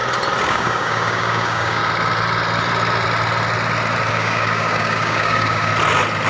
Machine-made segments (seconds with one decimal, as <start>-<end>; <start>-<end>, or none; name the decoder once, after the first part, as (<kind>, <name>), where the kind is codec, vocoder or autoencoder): 0.5-1.8 (codec, DAC); 4.1-5.7